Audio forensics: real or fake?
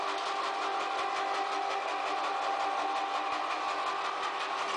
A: real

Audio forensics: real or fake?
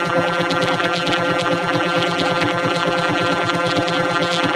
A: fake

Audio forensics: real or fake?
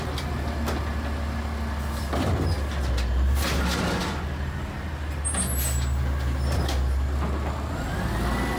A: real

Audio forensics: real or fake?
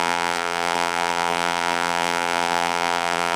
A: fake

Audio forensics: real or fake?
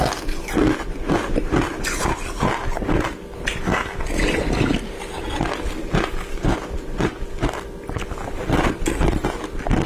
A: real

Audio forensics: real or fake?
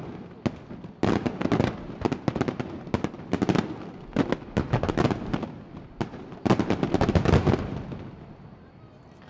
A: real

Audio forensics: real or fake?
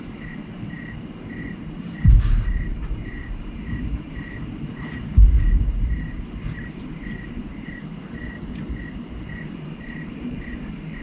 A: fake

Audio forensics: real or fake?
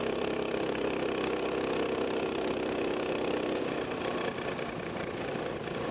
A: fake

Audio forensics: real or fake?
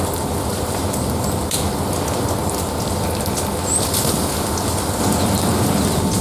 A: real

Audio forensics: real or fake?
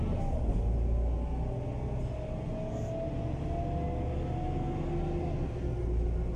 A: real